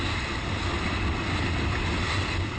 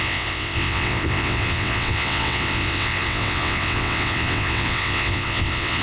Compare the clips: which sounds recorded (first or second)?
first